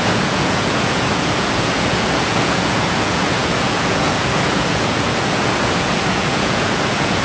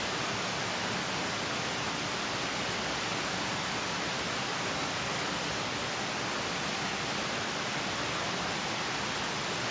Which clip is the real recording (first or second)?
second